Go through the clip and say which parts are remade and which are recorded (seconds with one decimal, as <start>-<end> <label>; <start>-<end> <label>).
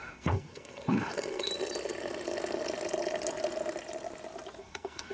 0.0-1.5 remade; 1.5-4.6 recorded; 4.6-5.1 remade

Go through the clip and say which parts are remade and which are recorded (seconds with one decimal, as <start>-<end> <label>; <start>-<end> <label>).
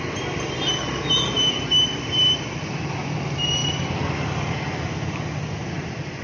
0.0-6.2 recorded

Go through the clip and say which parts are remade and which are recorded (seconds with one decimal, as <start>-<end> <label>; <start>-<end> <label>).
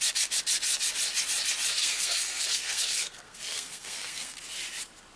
0.0-1.8 recorded; 1.8-4.4 remade; 4.4-5.2 recorded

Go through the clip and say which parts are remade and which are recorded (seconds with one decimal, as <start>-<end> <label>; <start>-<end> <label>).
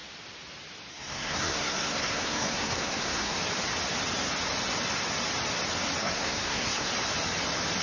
0.0-0.9 recorded; 0.9-3.4 remade; 3.4-6.0 recorded; 6.0-6.9 remade; 6.9-7.8 recorded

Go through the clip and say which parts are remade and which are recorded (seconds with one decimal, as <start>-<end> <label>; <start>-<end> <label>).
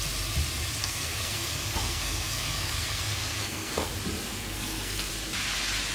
0.0-0.8 recorded; 0.8-3.9 remade; 3.9-4.3 recorded; 4.3-5.1 remade; 5.1-5.9 recorded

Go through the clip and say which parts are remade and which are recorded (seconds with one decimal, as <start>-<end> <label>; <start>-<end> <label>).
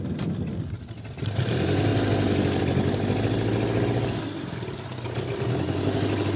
0.0-6.4 recorded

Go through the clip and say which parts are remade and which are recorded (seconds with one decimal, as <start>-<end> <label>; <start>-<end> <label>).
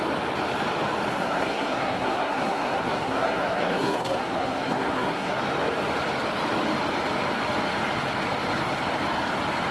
0.0-1.1 recorded; 1.1-5.4 remade; 5.4-9.7 recorded